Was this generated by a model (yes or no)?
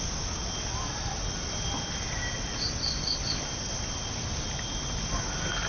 no